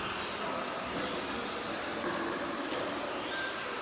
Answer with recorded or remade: recorded